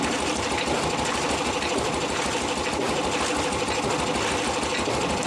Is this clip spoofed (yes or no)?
no